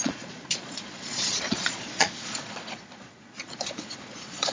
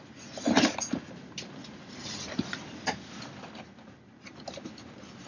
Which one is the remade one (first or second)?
first